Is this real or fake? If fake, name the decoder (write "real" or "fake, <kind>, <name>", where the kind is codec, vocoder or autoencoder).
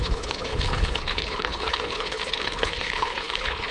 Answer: fake, codec, HILCodec